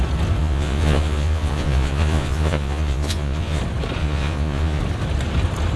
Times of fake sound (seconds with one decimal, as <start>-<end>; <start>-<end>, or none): 0.4-3.6; 4.0-4.8